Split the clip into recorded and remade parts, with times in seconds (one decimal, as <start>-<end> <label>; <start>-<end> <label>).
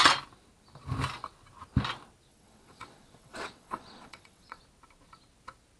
0.0-2.3 recorded; 2.3-4.6 remade; 4.6-5.8 recorded